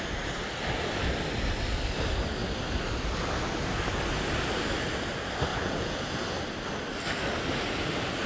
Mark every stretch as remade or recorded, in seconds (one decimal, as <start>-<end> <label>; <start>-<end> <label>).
0.0-5.5 recorded; 5.5-6.2 remade; 6.2-8.3 recorded